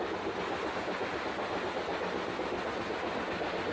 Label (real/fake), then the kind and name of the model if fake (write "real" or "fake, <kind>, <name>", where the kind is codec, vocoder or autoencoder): real